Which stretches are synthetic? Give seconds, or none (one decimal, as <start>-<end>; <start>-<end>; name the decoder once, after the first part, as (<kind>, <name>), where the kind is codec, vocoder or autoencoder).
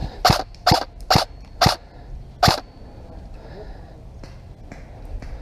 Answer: none